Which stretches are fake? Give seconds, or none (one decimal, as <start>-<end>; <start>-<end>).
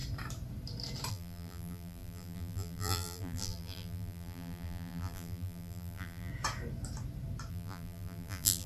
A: 1.1-6.3; 7.5-8.7